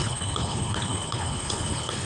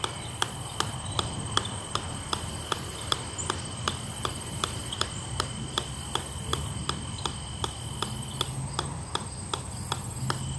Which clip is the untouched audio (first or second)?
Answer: second